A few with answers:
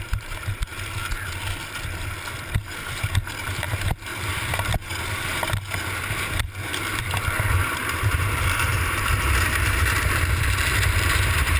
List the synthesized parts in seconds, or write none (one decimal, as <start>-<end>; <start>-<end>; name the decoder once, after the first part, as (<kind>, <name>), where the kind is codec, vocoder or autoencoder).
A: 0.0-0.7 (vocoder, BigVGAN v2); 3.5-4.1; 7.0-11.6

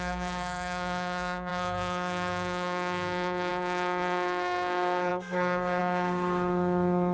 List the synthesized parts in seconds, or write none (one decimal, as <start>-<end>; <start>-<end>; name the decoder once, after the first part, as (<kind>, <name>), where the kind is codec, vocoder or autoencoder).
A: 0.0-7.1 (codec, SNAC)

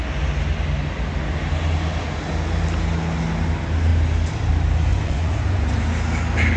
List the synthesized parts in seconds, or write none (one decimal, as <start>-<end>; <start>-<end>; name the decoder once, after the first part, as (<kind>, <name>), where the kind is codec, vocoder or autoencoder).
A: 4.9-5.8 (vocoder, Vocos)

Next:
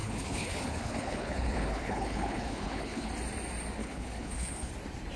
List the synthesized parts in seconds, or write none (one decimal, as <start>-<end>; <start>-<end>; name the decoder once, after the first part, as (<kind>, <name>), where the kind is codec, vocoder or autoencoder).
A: 0.0-3.1 (codec, HILCodec); 3.8-4.7

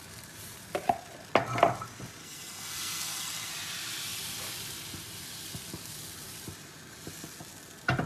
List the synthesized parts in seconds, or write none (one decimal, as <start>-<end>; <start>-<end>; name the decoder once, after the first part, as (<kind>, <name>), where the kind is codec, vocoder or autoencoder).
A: 2.2-3.5 (codec, SNAC)